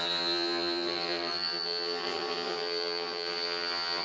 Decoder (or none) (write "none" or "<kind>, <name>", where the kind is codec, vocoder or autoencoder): vocoder, HiFi-GAN